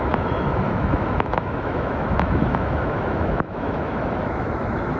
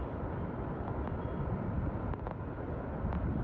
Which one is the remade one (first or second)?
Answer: first